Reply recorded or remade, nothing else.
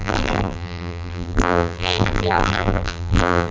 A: remade